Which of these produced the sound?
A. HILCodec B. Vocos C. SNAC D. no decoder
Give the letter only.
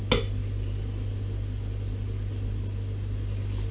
D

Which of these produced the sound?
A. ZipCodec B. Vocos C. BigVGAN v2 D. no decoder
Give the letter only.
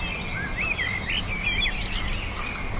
D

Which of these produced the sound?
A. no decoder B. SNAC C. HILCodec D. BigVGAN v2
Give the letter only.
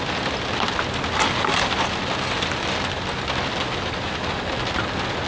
A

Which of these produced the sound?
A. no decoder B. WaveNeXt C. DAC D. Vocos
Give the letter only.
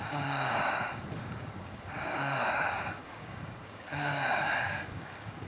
C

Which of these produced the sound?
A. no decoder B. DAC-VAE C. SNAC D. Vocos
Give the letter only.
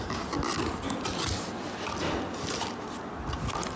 A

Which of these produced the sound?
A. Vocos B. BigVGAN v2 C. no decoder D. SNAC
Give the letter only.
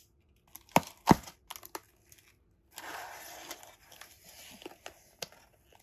C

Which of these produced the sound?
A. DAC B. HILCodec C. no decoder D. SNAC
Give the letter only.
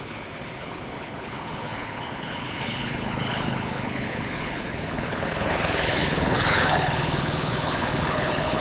B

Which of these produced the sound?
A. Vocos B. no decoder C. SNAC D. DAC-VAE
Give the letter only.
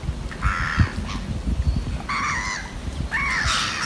B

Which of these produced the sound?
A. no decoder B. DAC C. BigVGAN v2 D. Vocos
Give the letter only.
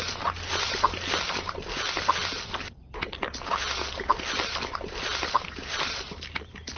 A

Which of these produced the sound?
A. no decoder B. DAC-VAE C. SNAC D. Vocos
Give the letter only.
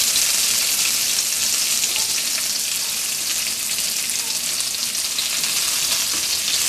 A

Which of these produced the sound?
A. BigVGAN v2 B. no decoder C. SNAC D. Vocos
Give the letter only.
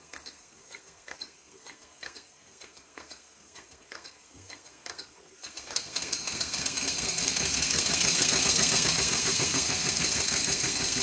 C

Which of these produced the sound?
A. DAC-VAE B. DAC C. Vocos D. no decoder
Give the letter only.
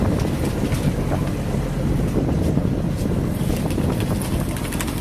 D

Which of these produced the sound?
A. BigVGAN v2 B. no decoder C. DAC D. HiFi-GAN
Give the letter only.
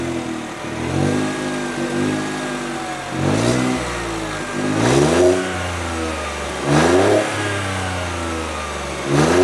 B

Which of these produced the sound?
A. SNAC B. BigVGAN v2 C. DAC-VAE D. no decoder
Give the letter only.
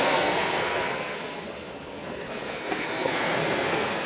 A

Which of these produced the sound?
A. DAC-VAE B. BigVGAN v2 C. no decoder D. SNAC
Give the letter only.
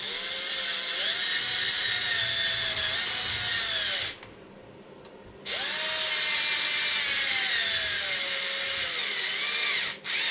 C